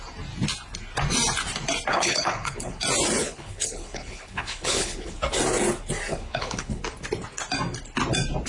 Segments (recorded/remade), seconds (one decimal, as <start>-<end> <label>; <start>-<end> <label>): 0.0-1.9 recorded; 1.9-2.8 remade; 2.8-3.2 recorded; 3.2-5.2 remade; 5.2-6.1 recorded; 6.1-6.8 remade; 6.8-8.5 recorded